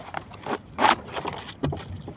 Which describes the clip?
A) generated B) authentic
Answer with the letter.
B